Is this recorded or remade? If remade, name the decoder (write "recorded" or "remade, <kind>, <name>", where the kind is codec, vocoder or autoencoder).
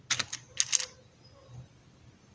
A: recorded